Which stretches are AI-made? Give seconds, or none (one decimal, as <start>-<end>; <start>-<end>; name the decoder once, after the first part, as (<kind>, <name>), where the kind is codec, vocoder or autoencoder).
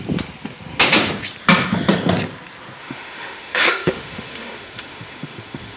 2.8-5.8 (autoencoder, DAC-VAE)